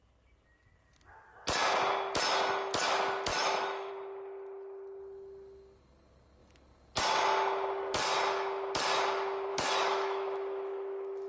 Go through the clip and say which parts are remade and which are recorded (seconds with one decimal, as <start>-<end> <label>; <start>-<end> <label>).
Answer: 0.0-3.3 recorded; 3.3-3.9 remade; 3.9-9.5 recorded; 9.5-11.3 remade